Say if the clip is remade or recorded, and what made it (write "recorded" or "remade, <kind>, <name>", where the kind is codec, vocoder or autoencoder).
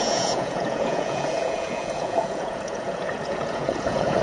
remade, vocoder, Vocos